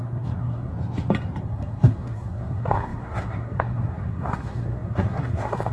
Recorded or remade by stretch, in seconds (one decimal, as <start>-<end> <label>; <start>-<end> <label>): 0.0-0.7 remade; 0.7-1.4 recorded; 1.4-5.7 remade